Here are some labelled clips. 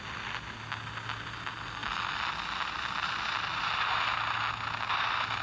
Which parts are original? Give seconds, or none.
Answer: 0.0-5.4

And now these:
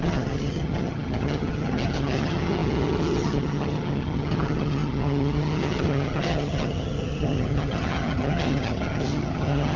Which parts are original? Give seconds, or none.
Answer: none

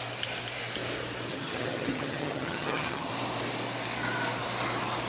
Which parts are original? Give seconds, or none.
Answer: 0.0-1.3; 3.1-5.1

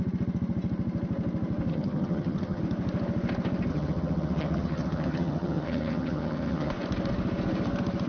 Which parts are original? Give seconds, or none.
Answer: 0.0-1.7; 2.6-3.7; 6.7-8.1

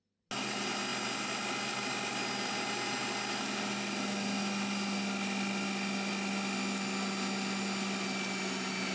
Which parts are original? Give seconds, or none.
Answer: 0.0-8.9

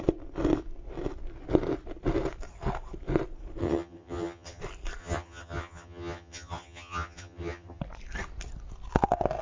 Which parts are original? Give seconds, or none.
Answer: 0.0-3.6; 4.6-5.0; 7.8-9.4